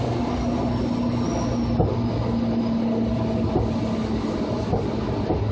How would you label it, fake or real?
real